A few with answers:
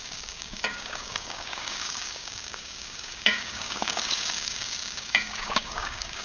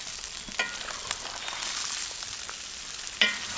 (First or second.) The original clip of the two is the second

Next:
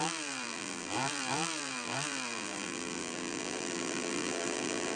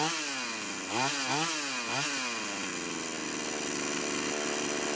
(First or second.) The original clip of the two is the second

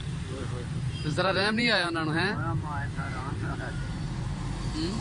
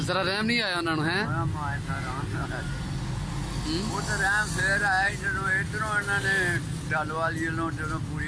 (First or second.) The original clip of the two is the second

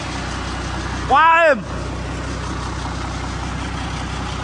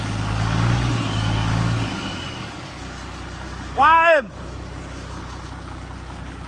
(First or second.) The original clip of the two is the first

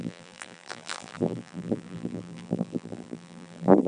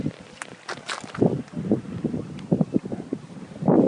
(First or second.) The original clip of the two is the second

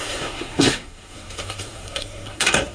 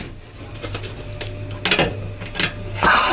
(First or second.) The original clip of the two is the second